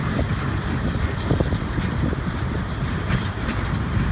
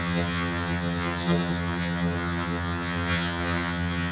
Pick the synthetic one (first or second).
second